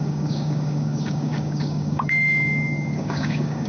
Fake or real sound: fake